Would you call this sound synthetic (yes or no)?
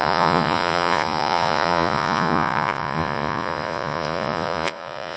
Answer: yes